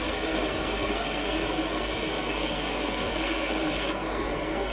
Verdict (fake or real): fake